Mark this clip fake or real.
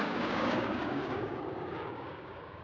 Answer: fake